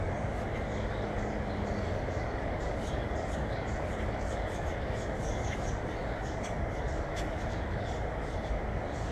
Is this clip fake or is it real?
fake